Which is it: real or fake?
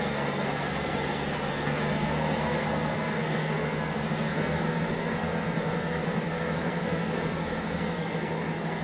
fake